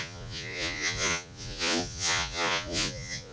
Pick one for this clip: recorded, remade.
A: remade